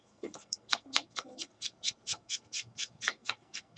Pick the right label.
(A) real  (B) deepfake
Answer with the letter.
B